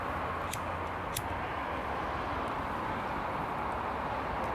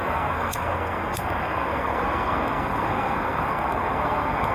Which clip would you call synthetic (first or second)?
second